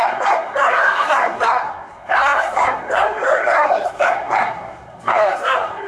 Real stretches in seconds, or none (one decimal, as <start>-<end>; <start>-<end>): none